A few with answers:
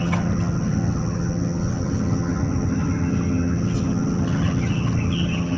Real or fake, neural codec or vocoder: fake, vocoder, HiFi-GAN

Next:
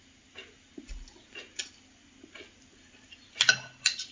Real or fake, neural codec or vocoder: real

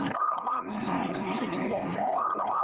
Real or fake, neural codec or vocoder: fake, codec, SNAC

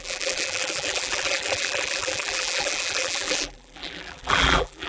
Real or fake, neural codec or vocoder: fake, vocoder, BigVGAN v2